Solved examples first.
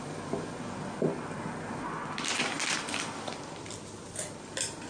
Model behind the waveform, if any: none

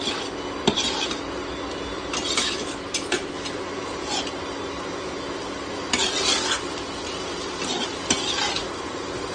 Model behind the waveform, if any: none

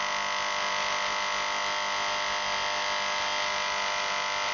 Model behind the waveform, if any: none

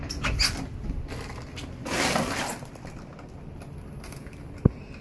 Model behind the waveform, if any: none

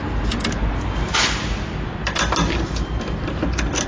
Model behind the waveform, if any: none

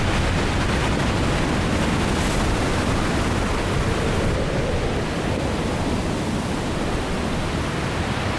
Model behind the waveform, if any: none